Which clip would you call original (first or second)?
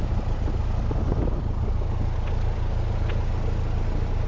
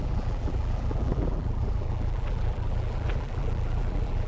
first